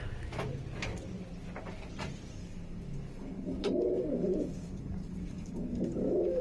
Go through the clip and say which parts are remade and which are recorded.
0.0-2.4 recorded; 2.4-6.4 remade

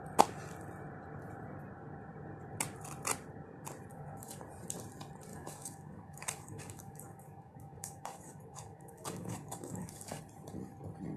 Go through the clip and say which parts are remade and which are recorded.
0.0-3.9 recorded; 3.9-4.4 remade; 4.4-5.3 recorded; 5.3-10.2 remade; 10.2-11.2 recorded

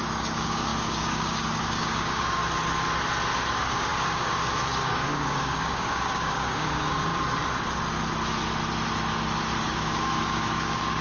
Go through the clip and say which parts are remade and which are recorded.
0.0-2.4 remade; 2.4-3.5 recorded; 3.5-7.1 remade; 7.1-9.6 recorded; 9.6-11.0 remade

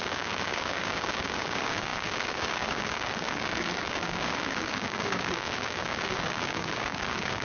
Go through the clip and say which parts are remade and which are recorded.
0.0-7.4 remade

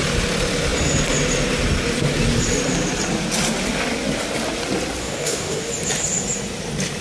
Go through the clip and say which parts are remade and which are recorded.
0.0-5.0 recorded; 5.0-5.7 remade; 5.7-7.0 recorded

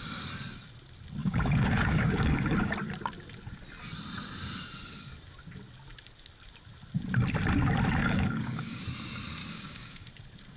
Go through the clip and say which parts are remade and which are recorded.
0.0-1.2 recorded; 1.2-2.7 remade; 2.7-8.0 recorded; 8.0-8.8 remade; 8.8-9.4 recorded; 9.4-10.1 remade; 10.1-10.6 recorded

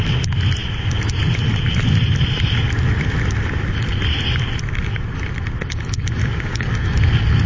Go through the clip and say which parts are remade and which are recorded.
0.0-6.2 recorded; 6.2-7.0 remade; 7.0-7.5 recorded

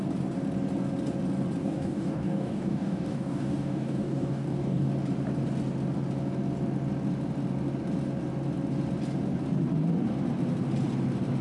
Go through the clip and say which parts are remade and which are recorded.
0.0-1.6 recorded; 1.6-4.9 remade; 4.9-11.4 recorded